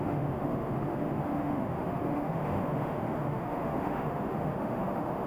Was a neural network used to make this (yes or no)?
yes